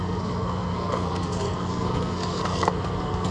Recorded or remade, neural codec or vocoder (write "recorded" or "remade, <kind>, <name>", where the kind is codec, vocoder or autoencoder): remade, codec, SNAC